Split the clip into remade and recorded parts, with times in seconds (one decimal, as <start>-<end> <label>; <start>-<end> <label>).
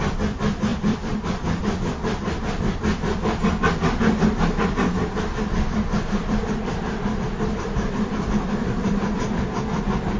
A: 0.0-0.7 recorded; 0.7-1.6 remade; 1.6-5.0 recorded; 5.0-9.0 remade; 9.0-10.2 recorded